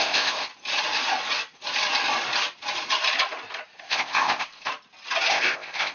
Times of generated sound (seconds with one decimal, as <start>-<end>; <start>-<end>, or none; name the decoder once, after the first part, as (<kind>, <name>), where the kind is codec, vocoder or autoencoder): 0.0-0.5 (codec, ZipCodec); 3.8-4.7; 5.3-5.9